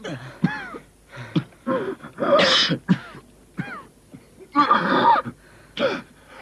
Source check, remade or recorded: recorded